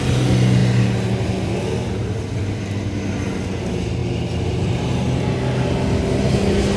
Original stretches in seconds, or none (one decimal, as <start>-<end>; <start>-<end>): 0.0-6.8